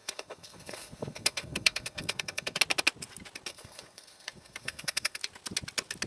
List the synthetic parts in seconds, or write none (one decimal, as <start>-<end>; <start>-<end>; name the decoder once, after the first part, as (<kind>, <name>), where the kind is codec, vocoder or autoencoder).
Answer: 0.0-2.6 (codec, SNAC); 3.5-5.2

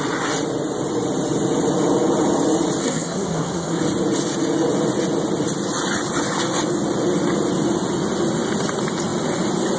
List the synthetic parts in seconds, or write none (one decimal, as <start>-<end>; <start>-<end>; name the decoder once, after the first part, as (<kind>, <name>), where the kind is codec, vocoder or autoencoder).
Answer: 2.8-3.8 (codec, SNAC)

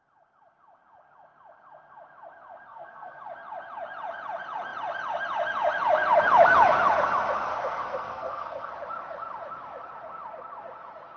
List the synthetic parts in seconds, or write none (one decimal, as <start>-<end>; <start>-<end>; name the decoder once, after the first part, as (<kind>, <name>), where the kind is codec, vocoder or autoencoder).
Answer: 2.7-3.2 (codec, SNAC); 7.5-8.7

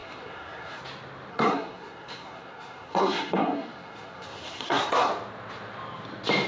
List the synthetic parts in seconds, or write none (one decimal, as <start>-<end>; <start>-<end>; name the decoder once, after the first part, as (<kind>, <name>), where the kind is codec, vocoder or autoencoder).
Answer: 0.0-0.8 (codec, SNAC); 1.3-5.1